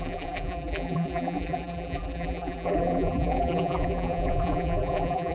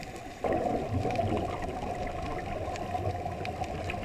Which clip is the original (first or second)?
second